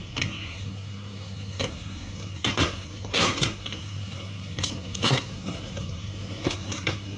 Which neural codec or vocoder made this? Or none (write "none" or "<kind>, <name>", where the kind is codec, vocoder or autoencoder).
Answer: codec, SNAC